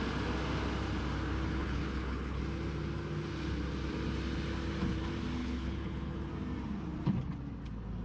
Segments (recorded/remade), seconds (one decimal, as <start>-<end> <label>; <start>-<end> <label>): 0.0-1.6 recorded; 1.6-2.4 remade; 2.4-5.4 recorded; 5.4-6.3 remade; 6.3-8.0 recorded